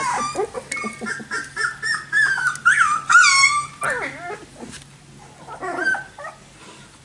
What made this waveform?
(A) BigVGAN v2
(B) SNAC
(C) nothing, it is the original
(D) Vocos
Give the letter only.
C